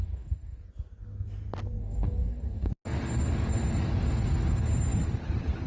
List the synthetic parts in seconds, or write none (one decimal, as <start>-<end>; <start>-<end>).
0.0-0.6; 1.8-2.7